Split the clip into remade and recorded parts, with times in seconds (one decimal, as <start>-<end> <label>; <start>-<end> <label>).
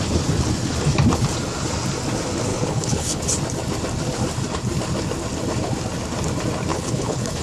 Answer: 0.0-2.5 recorded; 2.5-3.2 remade; 3.2-6.7 recorded; 6.7-7.4 remade